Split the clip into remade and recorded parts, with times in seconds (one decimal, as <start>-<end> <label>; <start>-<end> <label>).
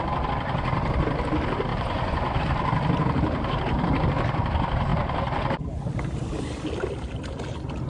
0.0-1.7 recorded; 1.7-2.4 remade; 2.4-7.9 recorded